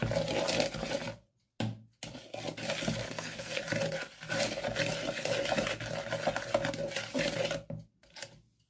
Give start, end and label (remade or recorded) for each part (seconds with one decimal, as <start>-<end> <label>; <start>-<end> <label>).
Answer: 0.0-3.0 recorded; 3.0-3.6 remade; 3.6-8.7 recorded